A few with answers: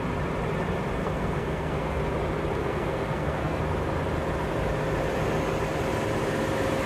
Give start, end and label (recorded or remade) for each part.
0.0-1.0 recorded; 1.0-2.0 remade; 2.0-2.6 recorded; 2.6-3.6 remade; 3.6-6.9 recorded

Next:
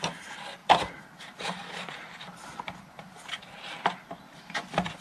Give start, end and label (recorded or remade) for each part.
0.0-0.6 recorded; 0.6-3.6 remade; 3.6-5.0 recorded

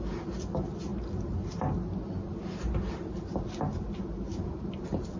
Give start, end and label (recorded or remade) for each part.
0.0-5.2 recorded

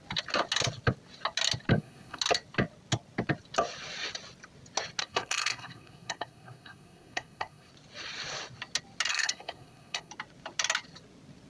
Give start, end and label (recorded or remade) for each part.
0.0-1.7 recorded; 1.7-2.2 remade; 2.2-5.0 recorded; 5.0-7.7 remade; 7.7-9.1 recorded; 9.1-10.1 remade; 10.1-11.5 recorded

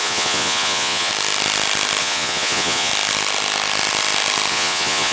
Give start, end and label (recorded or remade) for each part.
0.0-1.1 remade; 1.1-2.0 recorded; 2.0-2.9 remade; 2.9-4.5 recorded; 4.5-5.1 remade

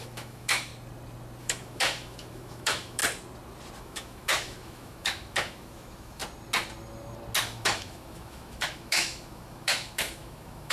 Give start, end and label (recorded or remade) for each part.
0.0-0.7 remade; 0.7-1.4 recorded; 1.4-3.0 remade; 3.0-3.8 recorded; 3.8-6.2 remade; 6.2-7.4 recorded; 7.4-10.7 remade

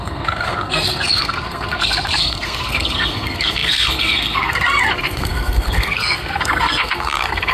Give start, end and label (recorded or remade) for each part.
0.0-7.5 remade